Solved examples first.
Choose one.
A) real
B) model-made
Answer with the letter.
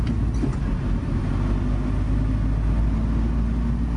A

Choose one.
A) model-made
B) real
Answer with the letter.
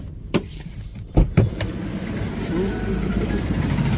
A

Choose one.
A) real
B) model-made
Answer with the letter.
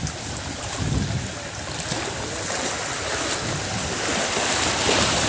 A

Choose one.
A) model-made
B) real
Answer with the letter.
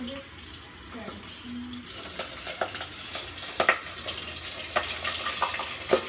B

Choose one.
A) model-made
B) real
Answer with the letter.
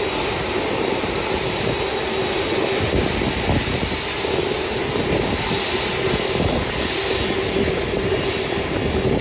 B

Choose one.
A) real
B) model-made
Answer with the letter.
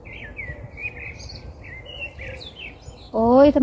A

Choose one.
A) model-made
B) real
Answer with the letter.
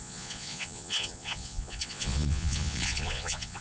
A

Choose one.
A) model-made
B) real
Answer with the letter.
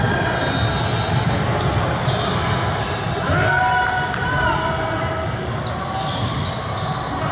B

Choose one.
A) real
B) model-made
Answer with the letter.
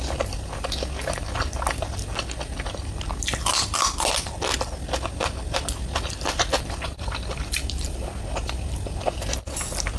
A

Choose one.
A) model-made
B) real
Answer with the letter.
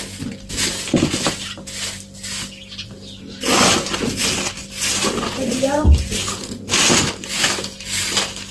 B